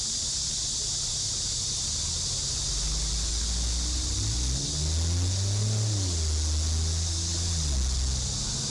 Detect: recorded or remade recorded